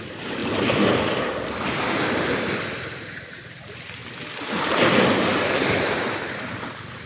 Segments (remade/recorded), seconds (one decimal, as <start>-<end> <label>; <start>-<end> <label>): 0.0-0.4 remade; 0.4-3.0 recorded; 3.0-4.0 remade; 4.0-5.8 recorded; 5.8-7.1 remade